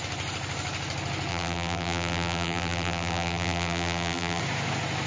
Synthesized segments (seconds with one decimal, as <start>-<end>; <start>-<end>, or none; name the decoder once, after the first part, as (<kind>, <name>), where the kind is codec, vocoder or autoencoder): 1.3-4.4 (vocoder, BigVGAN v2)